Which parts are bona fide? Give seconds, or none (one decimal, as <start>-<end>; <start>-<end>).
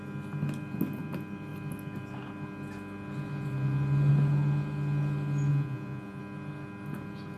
0.0-5.5; 6.2-7.4